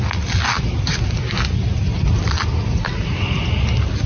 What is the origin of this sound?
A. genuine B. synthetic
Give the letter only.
A